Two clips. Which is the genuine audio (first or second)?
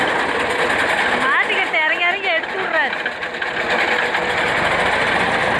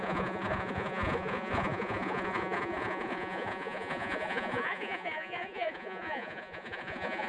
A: first